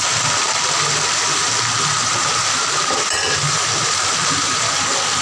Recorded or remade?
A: remade